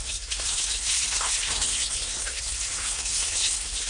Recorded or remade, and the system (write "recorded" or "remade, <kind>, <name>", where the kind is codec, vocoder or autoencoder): remade, codec, SNAC